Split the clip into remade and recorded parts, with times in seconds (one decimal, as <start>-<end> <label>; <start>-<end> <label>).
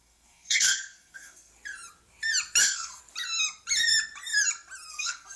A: 0.0-1.5 remade; 1.5-2.6 recorded; 2.6-3.0 remade; 3.0-4.9 recorded; 4.9-5.4 remade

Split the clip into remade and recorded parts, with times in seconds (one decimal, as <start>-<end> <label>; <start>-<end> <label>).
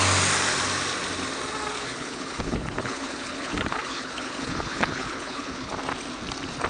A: 0.0-1.7 recorded; 1.7-5.7 remade; 5.7-6.7 recorded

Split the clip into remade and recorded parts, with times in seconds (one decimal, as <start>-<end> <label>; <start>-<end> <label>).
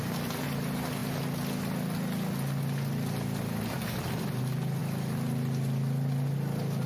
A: 0.0-6.9 recorded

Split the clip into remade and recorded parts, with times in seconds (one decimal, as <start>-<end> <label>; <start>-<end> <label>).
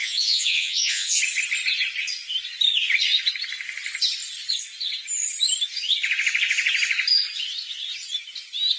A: 0.0-1.2 remade; 1.2-8.8 recorded